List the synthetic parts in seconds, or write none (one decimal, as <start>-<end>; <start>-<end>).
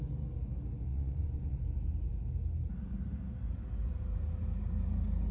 0.9-1.6